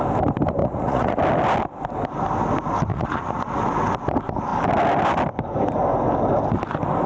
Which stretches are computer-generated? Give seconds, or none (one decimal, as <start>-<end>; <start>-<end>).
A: 0.6-1.2; 2.9-3.6